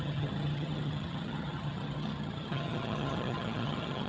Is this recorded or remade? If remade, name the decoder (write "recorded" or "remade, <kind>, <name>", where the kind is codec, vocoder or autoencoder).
remade, vocoder, HiFi-GAN